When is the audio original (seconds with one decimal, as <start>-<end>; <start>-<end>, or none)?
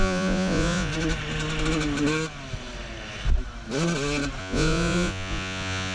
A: 0.9-4.4